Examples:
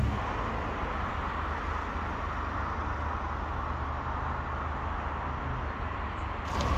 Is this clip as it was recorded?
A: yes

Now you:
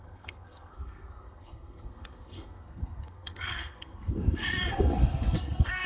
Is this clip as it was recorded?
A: no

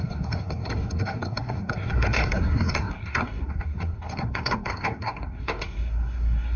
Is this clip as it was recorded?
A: no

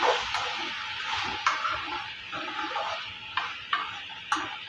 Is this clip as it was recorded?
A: yes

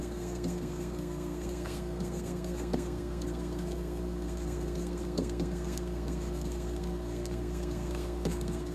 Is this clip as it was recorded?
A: no